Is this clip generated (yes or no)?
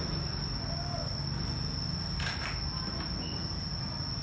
no